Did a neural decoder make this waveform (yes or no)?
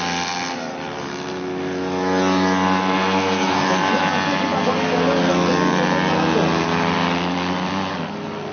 no